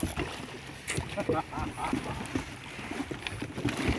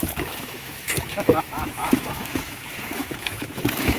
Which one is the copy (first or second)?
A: second